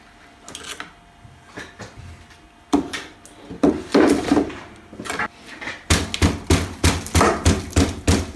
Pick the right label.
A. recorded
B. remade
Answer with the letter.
A